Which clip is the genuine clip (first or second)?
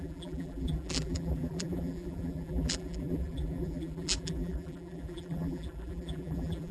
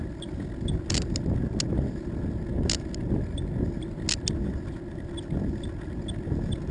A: second